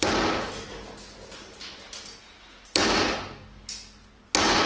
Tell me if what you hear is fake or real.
real